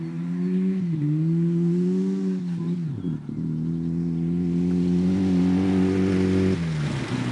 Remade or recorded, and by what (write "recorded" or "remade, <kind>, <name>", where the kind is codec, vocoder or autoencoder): recorded